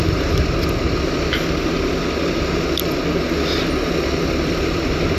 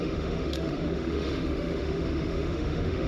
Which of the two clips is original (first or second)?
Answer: first